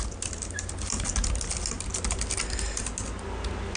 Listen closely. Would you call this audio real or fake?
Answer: real